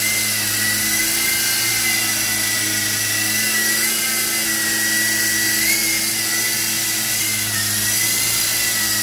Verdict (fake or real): real